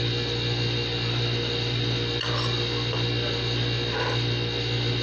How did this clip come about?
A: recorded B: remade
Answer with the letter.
B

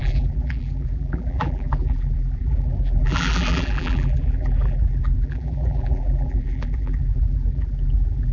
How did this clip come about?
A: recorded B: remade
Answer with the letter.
B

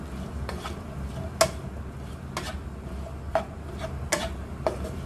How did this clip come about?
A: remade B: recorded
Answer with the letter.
B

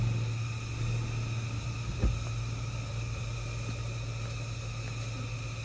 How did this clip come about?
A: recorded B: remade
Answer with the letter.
A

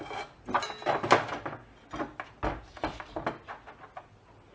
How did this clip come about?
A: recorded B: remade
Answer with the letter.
A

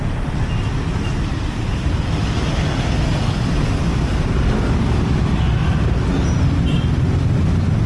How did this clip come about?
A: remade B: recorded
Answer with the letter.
B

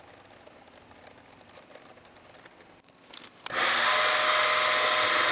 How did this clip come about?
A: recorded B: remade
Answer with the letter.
A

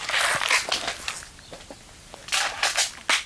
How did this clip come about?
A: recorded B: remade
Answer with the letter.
A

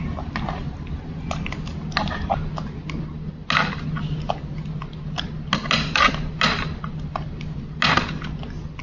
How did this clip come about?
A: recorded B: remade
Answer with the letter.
A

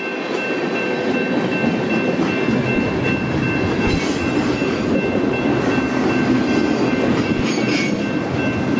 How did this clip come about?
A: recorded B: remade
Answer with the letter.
A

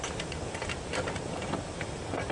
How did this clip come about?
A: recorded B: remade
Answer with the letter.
B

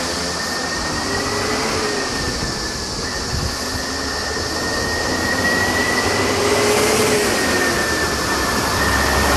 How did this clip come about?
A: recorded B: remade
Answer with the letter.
A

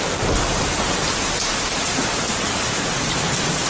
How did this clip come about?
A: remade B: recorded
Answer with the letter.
A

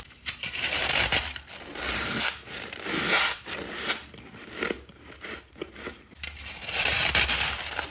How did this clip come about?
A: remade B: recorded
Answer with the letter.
A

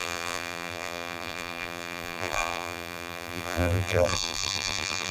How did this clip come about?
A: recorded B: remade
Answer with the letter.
B